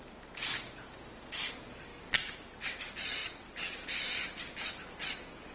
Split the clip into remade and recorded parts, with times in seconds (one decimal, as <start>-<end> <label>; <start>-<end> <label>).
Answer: 0.0-3.2 recorded; 3.2-3.7 remade; 3.7-5.5 recorded